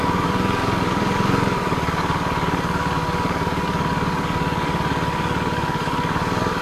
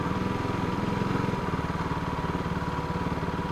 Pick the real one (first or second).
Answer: second